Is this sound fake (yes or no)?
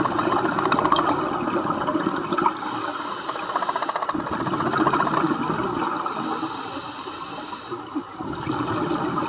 no